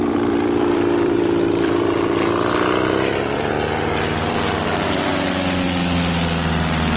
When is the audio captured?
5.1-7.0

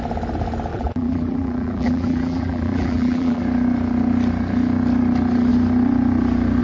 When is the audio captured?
0.0-0.7; 3.4-6.6

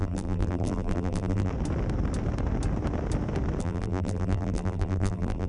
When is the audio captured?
1.5-3.6

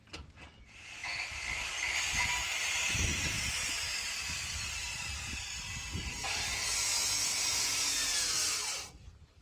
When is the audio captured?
1.0-2.0; 6.5-7.5

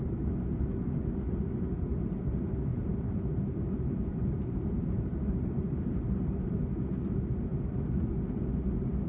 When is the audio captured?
0.0-2.7; 6.8-9.1

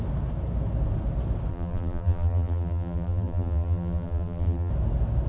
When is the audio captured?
0.0-1.5; 4.7-5.3